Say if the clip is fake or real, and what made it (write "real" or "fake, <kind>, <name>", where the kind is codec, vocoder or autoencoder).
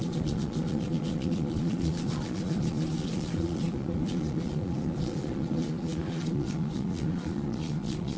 fake, vocoder, Vocos